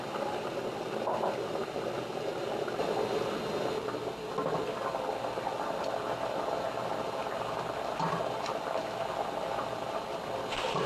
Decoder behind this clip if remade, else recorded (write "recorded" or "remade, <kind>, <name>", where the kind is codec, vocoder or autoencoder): recorded